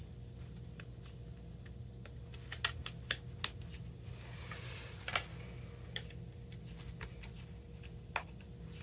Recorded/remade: recorded